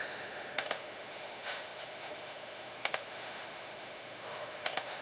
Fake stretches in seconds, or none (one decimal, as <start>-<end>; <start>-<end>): 0.0-5.0